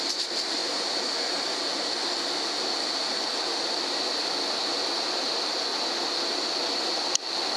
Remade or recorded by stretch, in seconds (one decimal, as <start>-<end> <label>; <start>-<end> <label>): 0.0-7.6 recorded